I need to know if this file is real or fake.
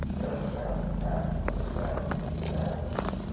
real